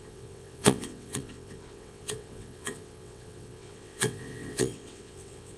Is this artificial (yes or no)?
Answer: yes